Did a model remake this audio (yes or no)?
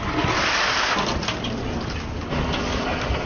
no